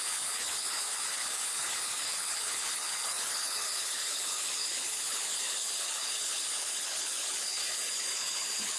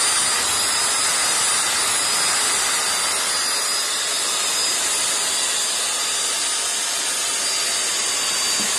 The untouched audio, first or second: second